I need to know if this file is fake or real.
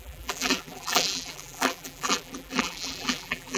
fake